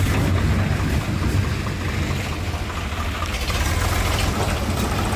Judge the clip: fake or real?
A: real